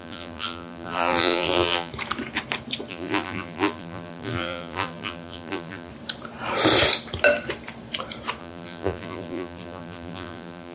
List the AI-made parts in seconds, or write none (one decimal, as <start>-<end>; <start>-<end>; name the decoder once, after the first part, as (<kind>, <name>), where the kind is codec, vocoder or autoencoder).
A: 0.0-1.9 (vocoder, BigVGAN v2); 2.9-5.9; 8.4-10.7